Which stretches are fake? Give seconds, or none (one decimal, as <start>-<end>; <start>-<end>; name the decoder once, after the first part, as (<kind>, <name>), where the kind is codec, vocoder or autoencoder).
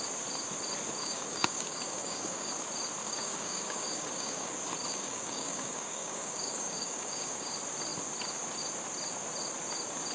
1.0-2.5 (codec, DAC); 3.0-4.5; 4.9-7.5